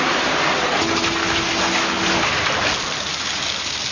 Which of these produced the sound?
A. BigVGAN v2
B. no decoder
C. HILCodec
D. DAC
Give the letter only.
B